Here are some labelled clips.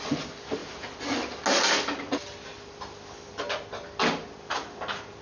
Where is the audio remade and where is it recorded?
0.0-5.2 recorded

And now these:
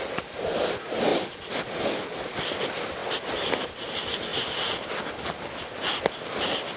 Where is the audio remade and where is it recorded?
0.0-6.8 recorded

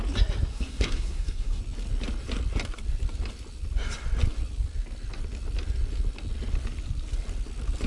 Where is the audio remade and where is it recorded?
0.0-0.5 recorded; 0.5-1.6 remade; 1.6-7.9 recorded